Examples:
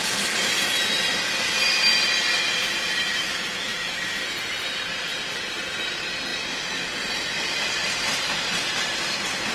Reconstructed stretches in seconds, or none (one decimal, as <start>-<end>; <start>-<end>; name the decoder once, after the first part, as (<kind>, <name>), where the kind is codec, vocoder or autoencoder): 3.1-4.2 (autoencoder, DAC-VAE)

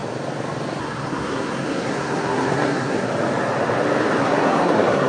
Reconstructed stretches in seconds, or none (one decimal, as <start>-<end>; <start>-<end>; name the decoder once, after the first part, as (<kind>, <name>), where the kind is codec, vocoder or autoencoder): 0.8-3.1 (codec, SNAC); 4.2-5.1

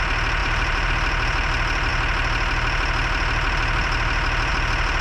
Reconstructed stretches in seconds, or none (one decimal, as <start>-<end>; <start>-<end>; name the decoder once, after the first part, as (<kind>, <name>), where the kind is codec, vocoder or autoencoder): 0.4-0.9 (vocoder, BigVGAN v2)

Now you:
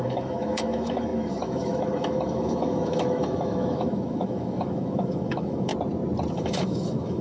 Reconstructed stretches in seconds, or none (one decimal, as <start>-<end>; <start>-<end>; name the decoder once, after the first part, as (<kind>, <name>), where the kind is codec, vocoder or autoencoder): 0.0-5.7 (autoencoder, DAC-VAE); 6.3-7.2

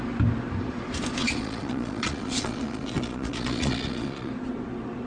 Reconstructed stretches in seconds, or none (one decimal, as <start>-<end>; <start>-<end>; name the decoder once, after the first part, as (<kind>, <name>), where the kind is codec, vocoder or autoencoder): 1.2-4.3 (vocoder, Vocos)

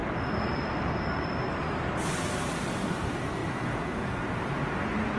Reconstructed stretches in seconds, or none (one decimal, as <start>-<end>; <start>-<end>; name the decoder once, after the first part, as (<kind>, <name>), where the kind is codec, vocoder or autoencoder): 3.4-4.2 (vocoder, Vocos)